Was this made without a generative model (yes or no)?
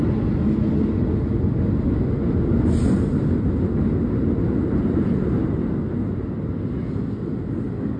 yes